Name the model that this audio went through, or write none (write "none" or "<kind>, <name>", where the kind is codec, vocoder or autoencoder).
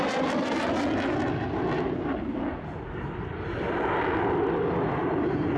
vocoder, BigVGAN v2